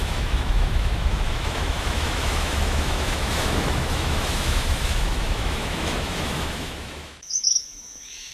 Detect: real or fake fake